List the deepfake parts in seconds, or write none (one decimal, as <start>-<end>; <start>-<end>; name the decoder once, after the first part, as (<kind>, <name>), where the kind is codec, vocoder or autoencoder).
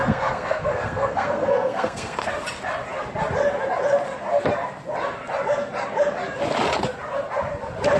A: 0.0-2.3 (codec, SNAC)